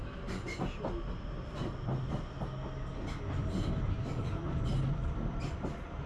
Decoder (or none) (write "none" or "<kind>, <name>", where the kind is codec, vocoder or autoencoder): none